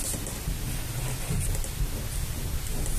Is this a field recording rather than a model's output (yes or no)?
yes